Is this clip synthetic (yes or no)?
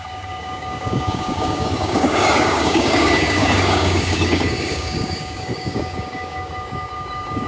yes